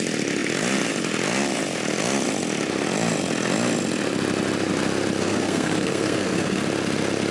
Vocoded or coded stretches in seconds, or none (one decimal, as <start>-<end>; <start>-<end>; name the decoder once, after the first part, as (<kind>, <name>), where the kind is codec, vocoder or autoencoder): 5.2-6.6 (codec, SNAC)